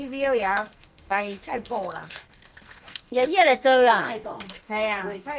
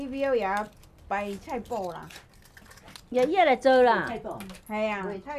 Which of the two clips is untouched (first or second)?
second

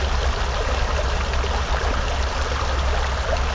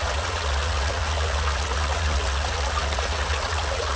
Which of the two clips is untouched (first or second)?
first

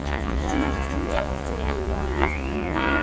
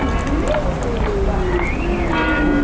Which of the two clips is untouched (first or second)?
second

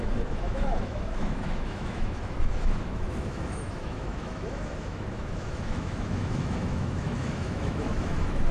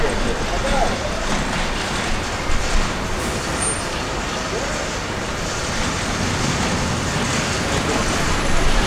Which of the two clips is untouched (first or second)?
second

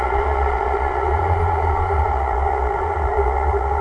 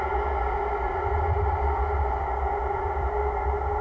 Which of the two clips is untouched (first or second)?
second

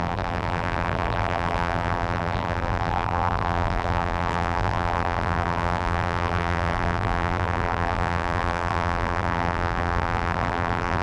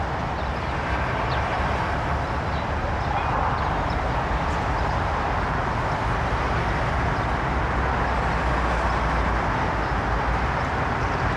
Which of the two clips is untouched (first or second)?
second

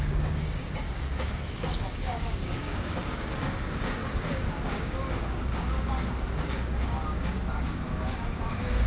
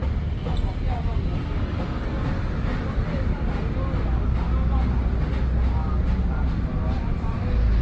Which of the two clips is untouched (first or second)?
second